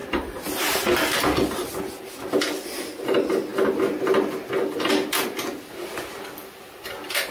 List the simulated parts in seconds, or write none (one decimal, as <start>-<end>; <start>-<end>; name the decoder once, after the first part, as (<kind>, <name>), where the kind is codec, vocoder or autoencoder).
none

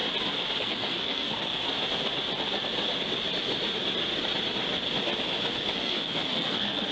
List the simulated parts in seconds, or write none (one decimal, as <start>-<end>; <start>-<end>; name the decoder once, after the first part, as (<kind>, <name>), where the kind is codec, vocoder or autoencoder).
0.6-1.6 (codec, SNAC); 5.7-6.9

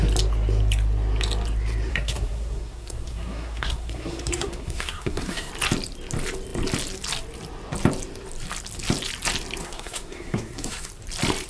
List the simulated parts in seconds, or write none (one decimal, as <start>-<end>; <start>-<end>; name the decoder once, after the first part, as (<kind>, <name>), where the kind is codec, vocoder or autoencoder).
1.9-5.5 (codec, SNAC); 9.6-10.9

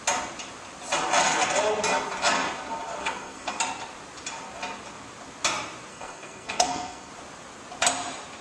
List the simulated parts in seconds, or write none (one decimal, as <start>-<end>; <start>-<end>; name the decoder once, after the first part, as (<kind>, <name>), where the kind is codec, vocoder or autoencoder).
3.0-3.6 (codec, SNAC); 5.9-7.1

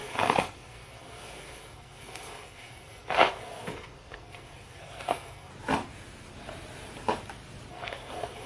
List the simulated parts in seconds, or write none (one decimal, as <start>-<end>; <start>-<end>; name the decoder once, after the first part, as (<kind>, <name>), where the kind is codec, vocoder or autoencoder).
0.0-5.5 (codec, SNAC); 7.7-8.5

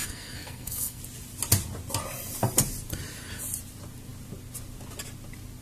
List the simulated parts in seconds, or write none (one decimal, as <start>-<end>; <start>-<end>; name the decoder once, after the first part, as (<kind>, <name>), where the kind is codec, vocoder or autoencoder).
0.0-1.0 (codec, SNAC)

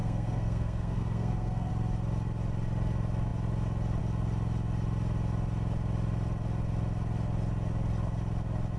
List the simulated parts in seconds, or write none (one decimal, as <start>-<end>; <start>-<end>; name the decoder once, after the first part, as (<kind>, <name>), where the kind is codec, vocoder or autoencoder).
0.0-1.7 (codec, SNAC)

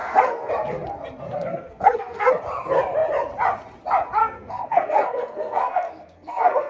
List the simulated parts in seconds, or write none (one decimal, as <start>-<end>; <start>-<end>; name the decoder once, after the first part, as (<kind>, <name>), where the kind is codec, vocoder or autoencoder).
0.0-0.5 (codec, SNAC); 1.5-2.3; 4.2-6.7